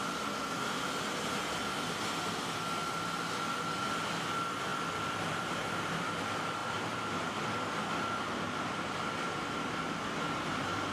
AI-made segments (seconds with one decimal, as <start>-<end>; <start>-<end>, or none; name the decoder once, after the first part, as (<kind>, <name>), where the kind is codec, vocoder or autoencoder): 4.7-5.6 (vocoder, BigVGAN v2); 6.6-7.1